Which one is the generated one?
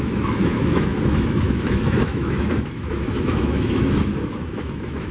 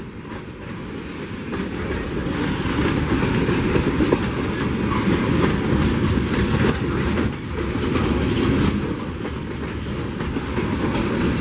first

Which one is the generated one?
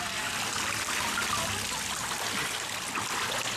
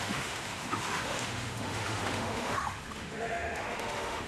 second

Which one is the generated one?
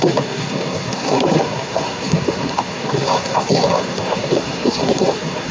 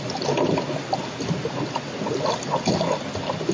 first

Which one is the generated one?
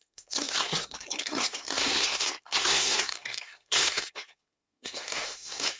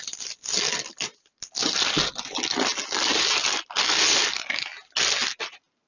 first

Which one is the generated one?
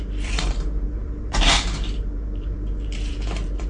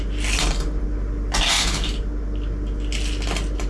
first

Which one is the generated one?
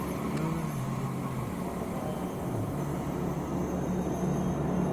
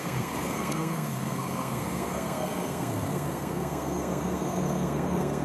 second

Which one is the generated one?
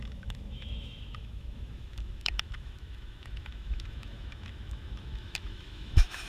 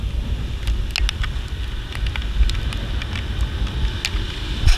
first